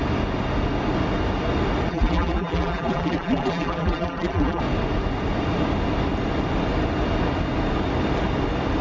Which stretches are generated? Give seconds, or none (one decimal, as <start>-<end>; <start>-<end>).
1.9-4.6